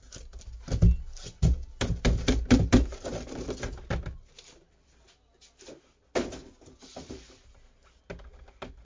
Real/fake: real